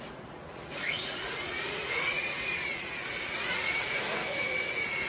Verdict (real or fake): fake